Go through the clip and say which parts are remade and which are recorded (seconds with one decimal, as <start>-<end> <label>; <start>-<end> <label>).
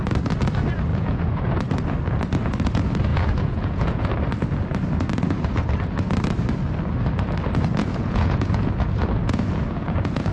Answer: 0.0-0.9 recorded; 0.9-1.5 remade; 1.5-3.1 recorded; 3.1-4.1 remade; 4.1-7.8 recorded; 7.8-8.7 remade; 8.7-9.2 recorded; 9.2-10.3 remade